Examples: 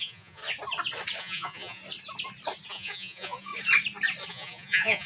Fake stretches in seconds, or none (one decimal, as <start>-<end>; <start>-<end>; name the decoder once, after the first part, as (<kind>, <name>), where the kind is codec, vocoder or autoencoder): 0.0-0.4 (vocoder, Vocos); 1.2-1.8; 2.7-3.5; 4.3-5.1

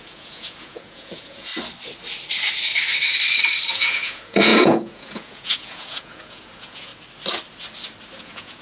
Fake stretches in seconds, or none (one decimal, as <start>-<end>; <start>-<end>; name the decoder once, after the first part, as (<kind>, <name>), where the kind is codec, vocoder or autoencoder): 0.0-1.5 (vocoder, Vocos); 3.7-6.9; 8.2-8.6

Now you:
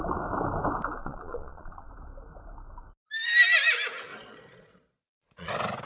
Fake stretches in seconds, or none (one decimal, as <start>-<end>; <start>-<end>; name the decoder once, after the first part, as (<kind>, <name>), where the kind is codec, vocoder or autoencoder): 1.0-1.9 (vocoder, Vocos); 4.1-5.5

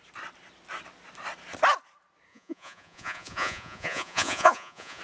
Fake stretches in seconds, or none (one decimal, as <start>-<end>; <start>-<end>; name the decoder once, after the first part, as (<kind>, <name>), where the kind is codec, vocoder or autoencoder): 2.3-5.0 (vocoder, Vocos)

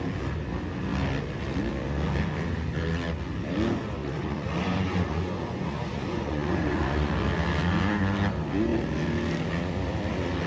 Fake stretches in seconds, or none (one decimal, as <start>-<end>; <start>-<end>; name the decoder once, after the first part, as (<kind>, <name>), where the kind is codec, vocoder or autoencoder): 4.0-7.1 (vocoder, Vocos)